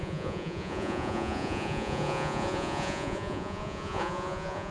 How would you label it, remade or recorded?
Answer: remade